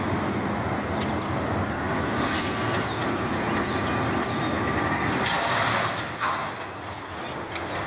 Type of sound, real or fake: real